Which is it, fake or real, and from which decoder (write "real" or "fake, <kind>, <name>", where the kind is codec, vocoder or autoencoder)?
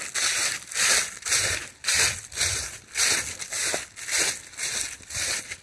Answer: real